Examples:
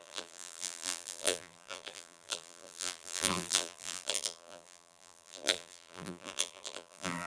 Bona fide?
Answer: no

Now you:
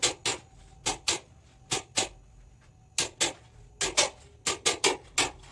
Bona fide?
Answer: yes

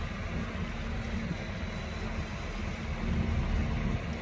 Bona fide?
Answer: yes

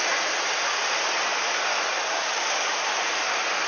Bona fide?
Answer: yes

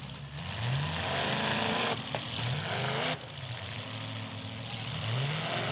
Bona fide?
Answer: yes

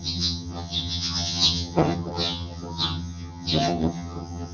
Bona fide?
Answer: no